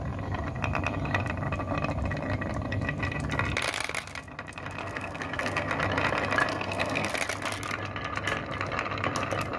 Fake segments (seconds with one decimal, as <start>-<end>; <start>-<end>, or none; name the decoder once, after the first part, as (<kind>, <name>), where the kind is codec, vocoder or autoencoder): 4.8-5.7 (codec, SNAC); 6.5-7.1

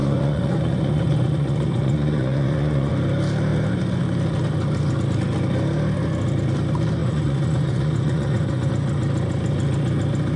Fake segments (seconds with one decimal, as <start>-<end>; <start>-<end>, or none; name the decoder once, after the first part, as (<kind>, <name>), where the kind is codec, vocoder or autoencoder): 0.0-2.9 (vocoder, Vocos); 7.0-8.7

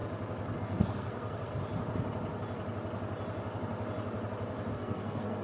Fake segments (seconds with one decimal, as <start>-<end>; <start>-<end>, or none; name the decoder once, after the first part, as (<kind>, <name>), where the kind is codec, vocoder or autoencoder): 0.6-1.5 (codec, SNAC); 4.7-5.4

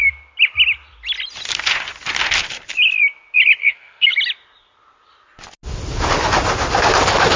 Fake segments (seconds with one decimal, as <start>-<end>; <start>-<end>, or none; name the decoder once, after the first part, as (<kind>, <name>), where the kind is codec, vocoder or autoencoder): 3.6-4.1 (codec, SNAC)